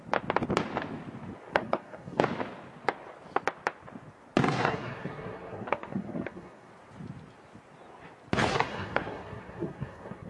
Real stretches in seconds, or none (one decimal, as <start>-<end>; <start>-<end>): 0.0-1.5; 2.2-4.4; 6.7-8.5